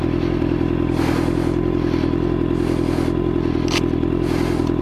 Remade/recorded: recorded